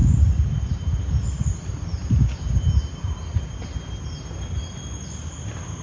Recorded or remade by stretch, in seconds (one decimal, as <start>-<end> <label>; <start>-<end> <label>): 0.0-5.8 recorded